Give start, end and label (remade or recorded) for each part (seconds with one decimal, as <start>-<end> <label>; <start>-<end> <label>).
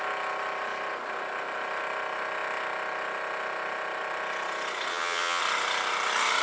0.0-4.9 recorded; 4.9-5.4 remade; 5.4-6.4 recorded